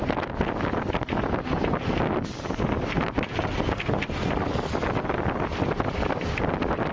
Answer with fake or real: real